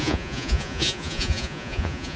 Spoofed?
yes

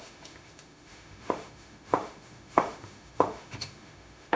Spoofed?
yes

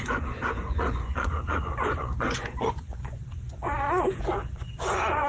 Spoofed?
yes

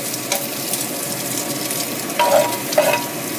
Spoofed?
no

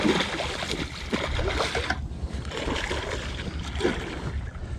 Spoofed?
no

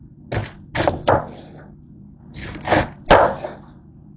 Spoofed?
no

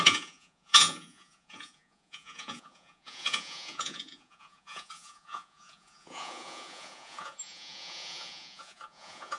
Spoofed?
yes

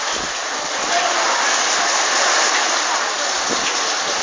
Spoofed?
no